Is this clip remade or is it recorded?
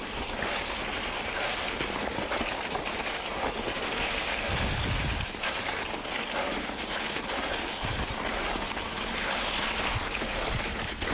recorded